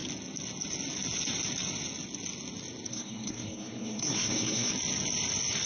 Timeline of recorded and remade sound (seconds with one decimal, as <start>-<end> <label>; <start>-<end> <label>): 0.0-2.9 recorded; 2.9-4.7 remade; 4.7-5.7 recorded